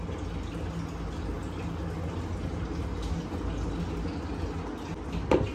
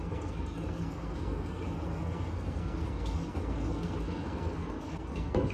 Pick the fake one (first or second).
second